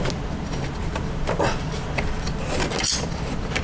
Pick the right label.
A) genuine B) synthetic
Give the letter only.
A